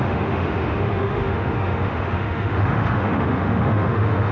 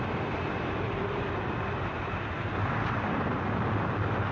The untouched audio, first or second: second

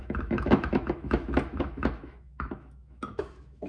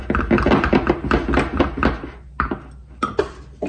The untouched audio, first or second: second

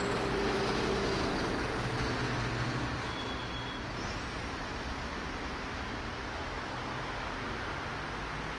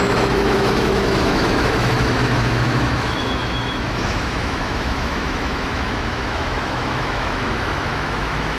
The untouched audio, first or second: first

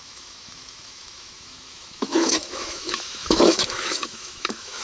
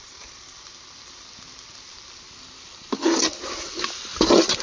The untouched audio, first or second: second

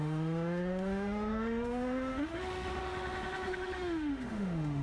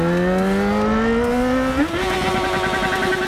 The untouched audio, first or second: second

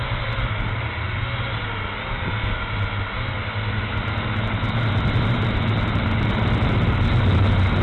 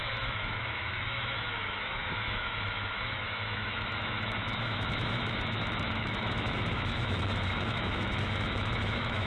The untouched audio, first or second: first